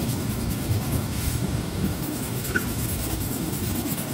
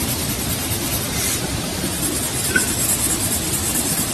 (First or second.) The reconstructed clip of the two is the first